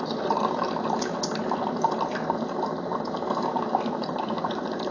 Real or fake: real